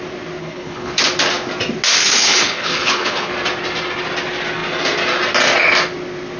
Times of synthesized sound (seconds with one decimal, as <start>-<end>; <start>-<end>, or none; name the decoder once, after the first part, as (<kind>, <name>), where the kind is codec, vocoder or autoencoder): 0.4-1.0 (codec, HILCodec); 2.0-3.3